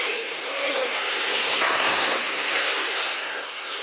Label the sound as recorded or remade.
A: remade